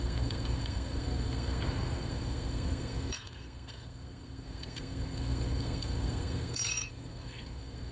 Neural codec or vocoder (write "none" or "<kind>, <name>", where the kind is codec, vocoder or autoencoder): codec, SNAC